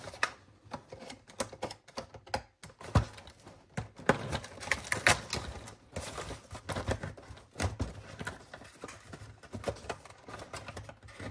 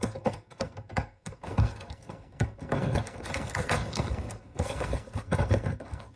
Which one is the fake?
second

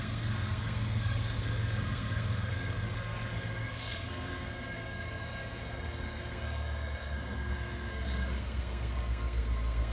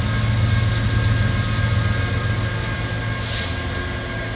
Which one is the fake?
first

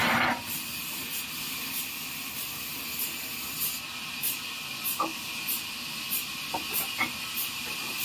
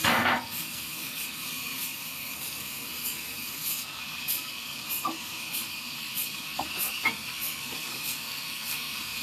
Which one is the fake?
second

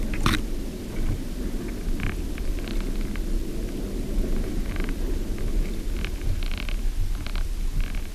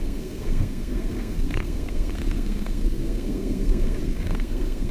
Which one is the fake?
second